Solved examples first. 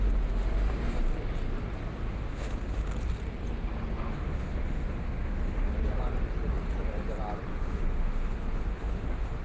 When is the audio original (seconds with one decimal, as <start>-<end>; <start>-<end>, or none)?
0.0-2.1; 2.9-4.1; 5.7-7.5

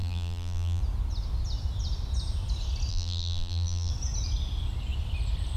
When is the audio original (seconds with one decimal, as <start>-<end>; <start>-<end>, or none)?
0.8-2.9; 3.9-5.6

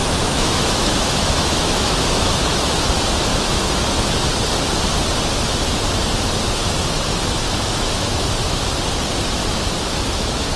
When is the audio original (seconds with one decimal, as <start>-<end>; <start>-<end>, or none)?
2.8-3.3; 3.9-6.6; 8.6-9.4

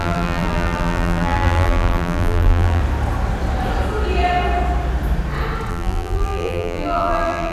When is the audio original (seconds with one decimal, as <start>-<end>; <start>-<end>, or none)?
2.8-5.7